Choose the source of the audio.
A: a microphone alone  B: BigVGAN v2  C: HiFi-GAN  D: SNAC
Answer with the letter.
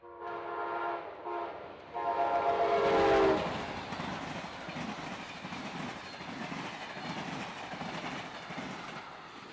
A